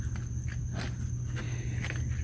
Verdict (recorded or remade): recorded